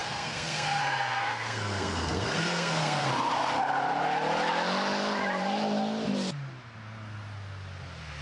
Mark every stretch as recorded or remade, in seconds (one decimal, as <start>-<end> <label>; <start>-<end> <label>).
0.0-3.1 remade; 3.1-8.2 recorded